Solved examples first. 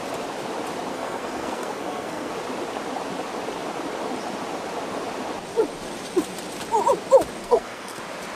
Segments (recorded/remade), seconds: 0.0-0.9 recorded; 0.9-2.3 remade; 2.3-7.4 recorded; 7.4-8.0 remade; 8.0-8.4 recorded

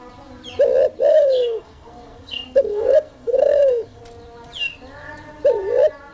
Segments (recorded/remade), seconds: 0.0-1.1 recorded; 1.1-4.0 remade; 4.0-6.1 recorded

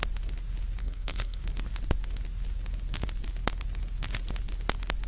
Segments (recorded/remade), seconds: 0.0-0.8 recorded; 0.8-1.4 remade; 1.4-5.1 recorded